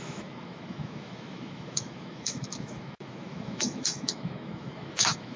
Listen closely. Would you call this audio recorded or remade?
remade